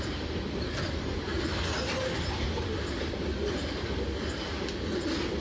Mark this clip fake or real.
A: real